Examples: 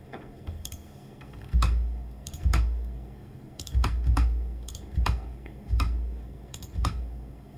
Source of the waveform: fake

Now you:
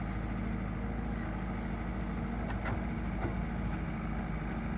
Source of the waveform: real